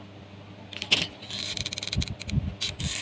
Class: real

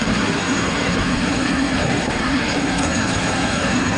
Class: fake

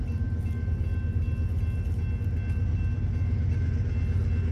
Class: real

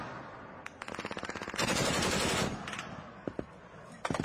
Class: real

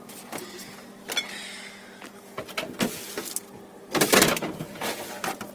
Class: real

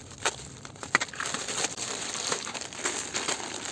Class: fake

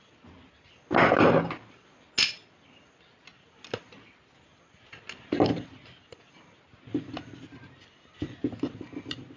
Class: real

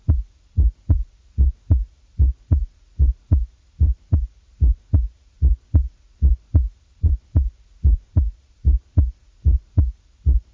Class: fake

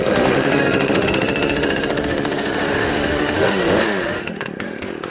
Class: fake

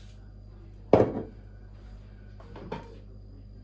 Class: real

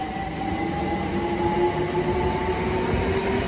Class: real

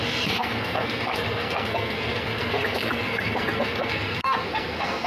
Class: fake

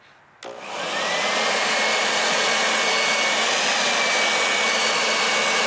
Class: real